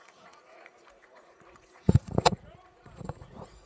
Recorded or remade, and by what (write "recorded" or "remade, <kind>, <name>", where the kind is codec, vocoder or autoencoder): remade, vocoder, Vocos